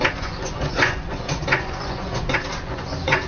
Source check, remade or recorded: remade